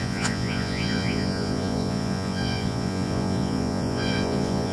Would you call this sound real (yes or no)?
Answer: no